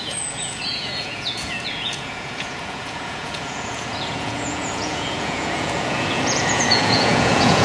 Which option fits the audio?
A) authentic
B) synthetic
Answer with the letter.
B